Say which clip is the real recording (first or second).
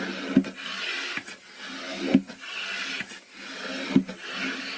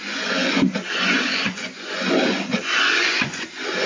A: first